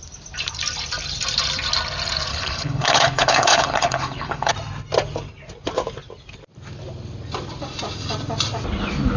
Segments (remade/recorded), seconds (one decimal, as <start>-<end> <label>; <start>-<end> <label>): 0.0-2.3 recorded; 2.3-4.5 remade; 4.5-9.2 recorded